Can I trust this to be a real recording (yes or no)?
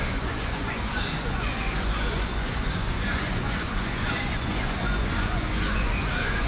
no